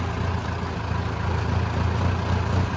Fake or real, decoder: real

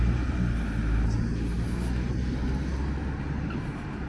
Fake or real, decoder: real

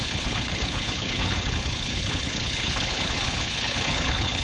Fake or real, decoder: fake, codec, HILCodec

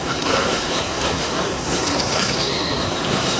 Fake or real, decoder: fake, codec, SNAC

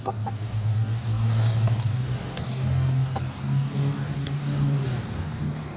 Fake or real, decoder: fake, codec, DAC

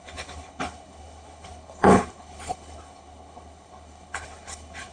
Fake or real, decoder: fake, codec, HILCodec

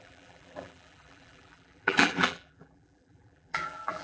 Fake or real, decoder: fake, vocoder, BigVGAN v2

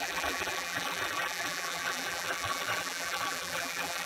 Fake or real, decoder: fake, vocoder, BigVGAN v2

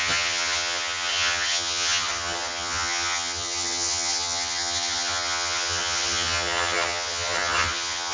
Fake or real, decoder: fake, vocoder, HiFi-GAN